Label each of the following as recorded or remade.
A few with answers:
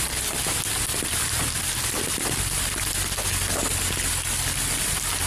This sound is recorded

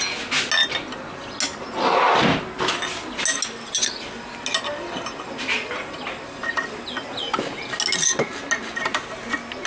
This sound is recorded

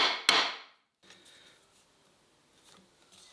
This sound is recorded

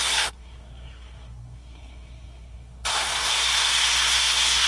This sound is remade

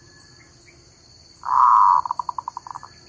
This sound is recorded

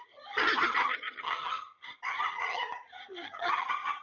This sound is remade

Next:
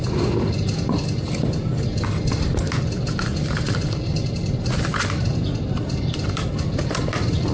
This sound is recorded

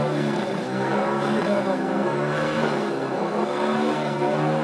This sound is remade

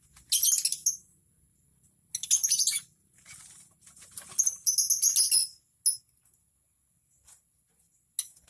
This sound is recorded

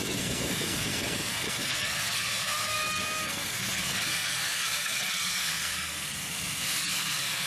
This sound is remade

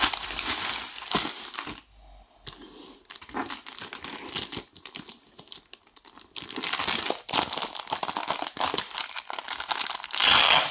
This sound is recorded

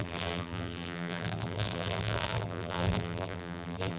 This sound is remade